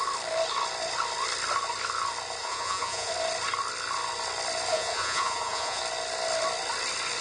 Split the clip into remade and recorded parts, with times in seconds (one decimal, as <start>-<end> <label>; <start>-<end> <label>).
0.0-2.4 recorded; 2.4-3.1 remade; 3.1-4.7 recorded; 4.7-5.8 remade; 5.8-7.2 recorded